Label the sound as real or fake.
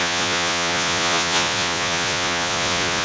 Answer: fake